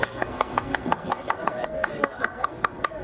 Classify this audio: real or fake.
fake